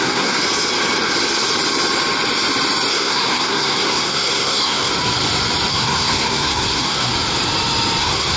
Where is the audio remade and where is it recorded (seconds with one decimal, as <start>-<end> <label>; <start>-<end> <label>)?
0.0-0.4 remade; 0.4-2.9 recorded; 2.9-4.9 remade; 4.9-5.7 recorded; 5.7-7.1 remade; 7.1-8.0 recorded; 8.0-8.4 remade